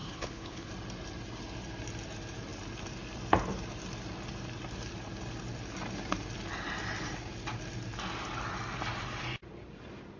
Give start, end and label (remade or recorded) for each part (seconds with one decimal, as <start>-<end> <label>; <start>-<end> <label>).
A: 0.0-0.7 remade; 0.7-10.2 recorded